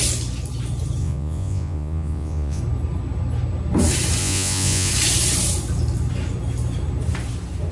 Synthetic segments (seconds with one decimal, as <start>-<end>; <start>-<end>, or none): 1.0-2.6; 4.2-4.9